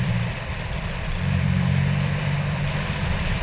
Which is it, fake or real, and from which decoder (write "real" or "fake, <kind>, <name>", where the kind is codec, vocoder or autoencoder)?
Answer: fake, vocoder, BigVGAN v2